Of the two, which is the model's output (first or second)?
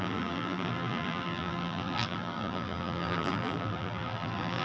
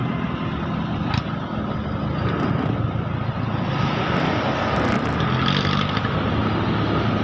first